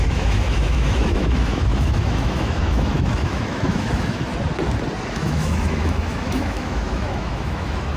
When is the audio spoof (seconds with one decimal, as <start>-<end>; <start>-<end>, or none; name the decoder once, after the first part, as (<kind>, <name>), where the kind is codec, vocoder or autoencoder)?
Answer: 0.0-4.3 (autoencoder, DAC-VAE); 5.1-8.0